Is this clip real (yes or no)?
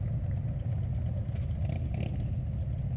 yes